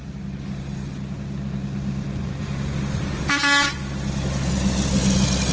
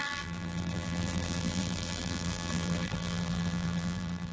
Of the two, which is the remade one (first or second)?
second